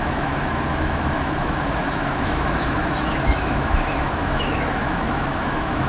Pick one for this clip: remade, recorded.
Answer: remade